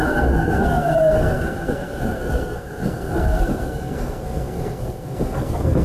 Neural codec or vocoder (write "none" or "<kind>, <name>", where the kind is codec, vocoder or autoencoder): codec, SNAC